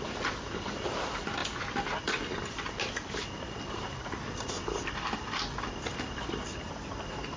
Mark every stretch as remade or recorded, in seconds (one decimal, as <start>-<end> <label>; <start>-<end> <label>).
0.0-7.4 recorded